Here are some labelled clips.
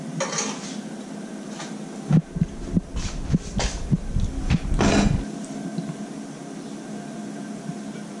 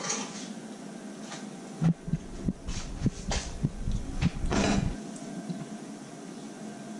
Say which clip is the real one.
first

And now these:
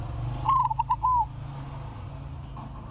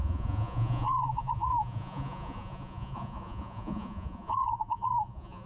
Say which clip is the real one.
first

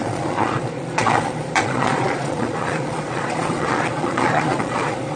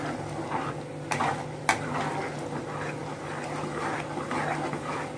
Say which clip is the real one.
second